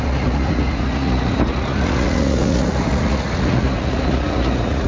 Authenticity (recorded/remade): remade